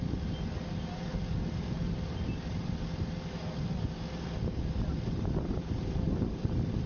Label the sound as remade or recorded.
recorded